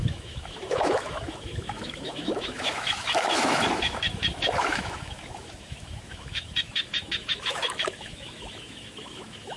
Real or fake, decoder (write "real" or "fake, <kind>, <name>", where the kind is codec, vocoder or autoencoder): fake, autoencoder, DAC-VAE